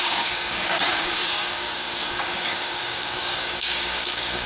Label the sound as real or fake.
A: fake